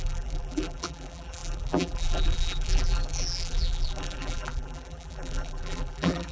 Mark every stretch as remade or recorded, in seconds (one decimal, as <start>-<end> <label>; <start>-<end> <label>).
0.0-6.3 remade